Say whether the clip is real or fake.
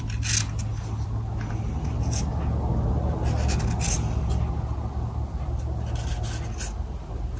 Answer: real